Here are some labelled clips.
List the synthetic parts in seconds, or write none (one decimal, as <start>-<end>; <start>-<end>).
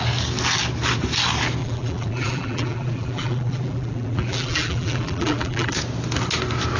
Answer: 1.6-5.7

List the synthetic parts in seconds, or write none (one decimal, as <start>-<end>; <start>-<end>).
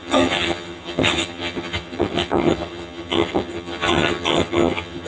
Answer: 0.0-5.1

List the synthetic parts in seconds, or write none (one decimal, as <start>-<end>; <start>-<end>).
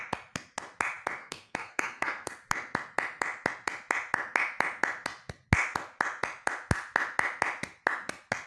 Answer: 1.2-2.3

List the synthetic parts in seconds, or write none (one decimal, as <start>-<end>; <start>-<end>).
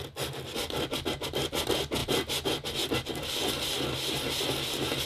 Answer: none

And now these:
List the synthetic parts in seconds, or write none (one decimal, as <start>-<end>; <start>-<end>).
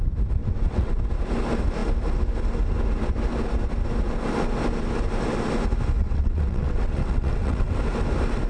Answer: 0.4-0.9; 6.0-7.8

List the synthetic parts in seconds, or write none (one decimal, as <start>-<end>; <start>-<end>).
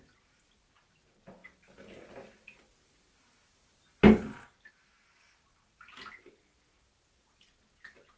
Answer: none